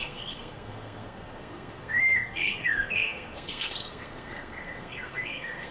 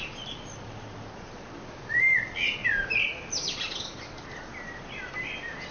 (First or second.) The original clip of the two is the second